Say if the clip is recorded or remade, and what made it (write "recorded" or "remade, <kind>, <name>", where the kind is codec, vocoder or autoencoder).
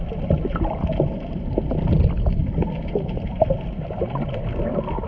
recorded